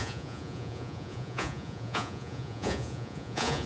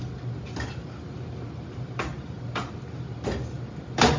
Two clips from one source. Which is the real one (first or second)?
second